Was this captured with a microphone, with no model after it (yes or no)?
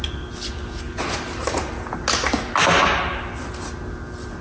yes